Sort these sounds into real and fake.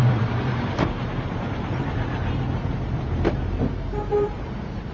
fake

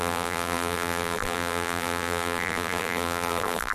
fake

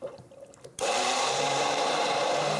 fake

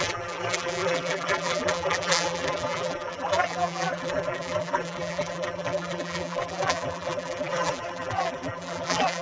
fake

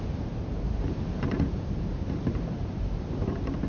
fake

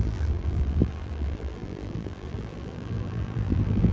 fake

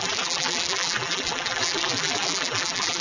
fake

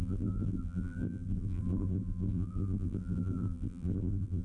fake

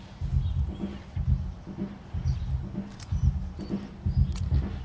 real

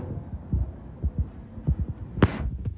real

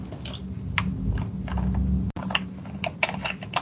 real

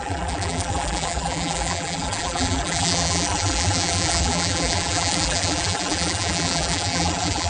fake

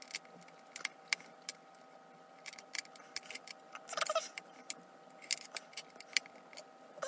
real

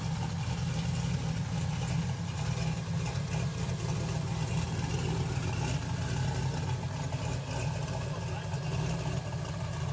real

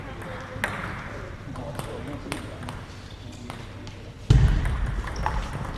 real